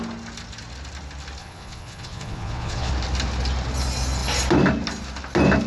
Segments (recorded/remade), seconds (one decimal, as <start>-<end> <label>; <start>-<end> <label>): 0.0-1.4 recorded; 1.4-2.9 remade; 2.9-5.7 recorded